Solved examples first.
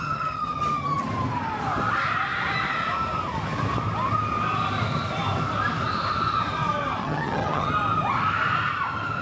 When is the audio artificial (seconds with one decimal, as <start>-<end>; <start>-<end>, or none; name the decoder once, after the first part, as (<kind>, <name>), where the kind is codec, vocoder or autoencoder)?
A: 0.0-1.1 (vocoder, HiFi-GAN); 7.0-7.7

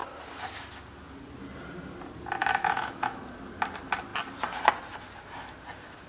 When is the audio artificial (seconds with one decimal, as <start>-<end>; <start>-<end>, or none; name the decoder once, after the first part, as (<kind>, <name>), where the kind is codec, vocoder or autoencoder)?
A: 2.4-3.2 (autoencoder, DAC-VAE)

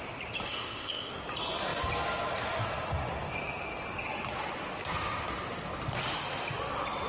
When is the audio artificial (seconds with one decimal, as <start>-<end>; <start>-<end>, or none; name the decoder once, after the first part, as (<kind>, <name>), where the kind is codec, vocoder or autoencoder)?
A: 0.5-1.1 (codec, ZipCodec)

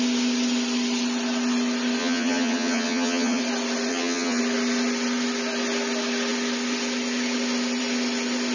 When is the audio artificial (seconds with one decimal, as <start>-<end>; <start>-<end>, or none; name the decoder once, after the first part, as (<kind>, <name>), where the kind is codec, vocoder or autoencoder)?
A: 2.0-3.4 (vocoder, HiFi-GAN); 3.9-4.4

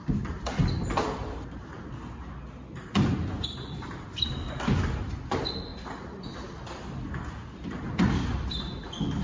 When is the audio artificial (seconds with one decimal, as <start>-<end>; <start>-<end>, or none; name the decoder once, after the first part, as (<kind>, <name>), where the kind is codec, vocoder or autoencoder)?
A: 0.0-0.8 (vocoder, BigVGAN v2)